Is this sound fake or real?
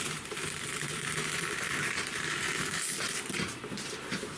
fake